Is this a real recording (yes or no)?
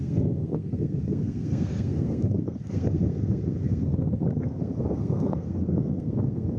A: no